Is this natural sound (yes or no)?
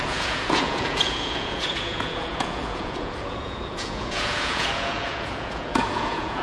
no